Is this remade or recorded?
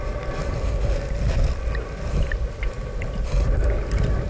recorded